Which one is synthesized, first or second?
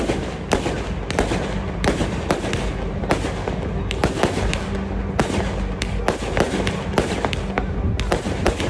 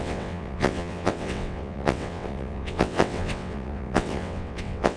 second